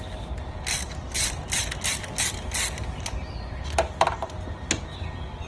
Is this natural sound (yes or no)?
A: yes